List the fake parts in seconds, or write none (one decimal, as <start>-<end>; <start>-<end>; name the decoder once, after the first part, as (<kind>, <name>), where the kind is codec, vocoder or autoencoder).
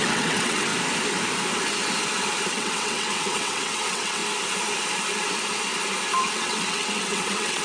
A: 0.0-0.7 (vocoder, WaveNeXt); 2.5-4.2; 6.2-7.6